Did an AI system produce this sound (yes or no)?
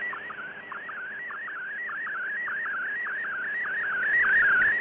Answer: no